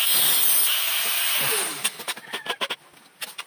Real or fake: real